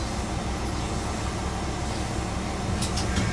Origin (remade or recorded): recorded